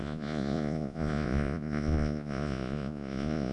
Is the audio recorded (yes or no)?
no